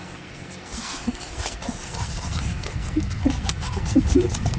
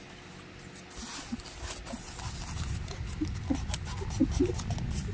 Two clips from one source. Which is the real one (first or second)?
second